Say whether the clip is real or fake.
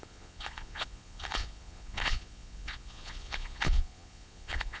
fake